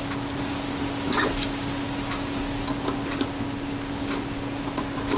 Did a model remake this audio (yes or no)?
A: no